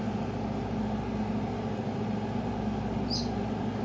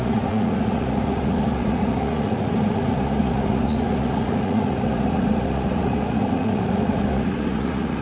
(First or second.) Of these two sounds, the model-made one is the second